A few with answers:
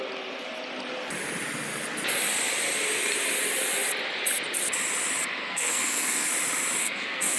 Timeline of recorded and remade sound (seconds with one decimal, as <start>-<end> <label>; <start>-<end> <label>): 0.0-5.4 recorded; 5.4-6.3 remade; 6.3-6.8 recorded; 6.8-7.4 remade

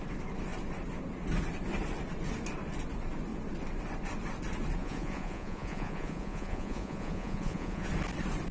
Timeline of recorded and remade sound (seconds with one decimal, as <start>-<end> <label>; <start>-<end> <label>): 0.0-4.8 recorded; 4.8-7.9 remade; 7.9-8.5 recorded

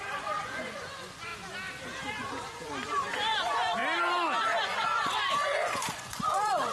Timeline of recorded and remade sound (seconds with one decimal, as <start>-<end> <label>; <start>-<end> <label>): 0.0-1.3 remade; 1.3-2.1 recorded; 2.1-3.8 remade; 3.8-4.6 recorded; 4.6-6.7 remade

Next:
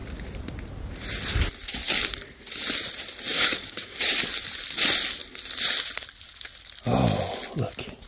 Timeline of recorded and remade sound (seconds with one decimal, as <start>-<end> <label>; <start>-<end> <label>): 0.0-3.3 recorded; 3.3-4.0 remade; 4.0-8.1 recorded

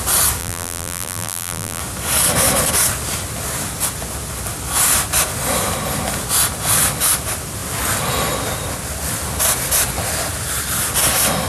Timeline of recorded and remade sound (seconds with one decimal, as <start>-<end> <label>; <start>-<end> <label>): 0.0-0.4 recorded; 0.4-1.8 remade; 1.8-11.5 recorded

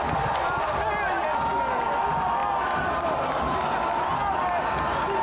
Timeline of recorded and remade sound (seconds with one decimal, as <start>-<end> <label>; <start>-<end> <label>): 0.0-5.2 recorded